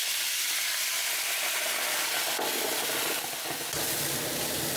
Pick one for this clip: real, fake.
real